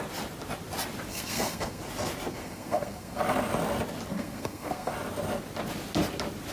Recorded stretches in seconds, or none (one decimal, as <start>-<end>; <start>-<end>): 0.0-1.1; 1.8-2.3; 3.2-4.1; 4.9-6.5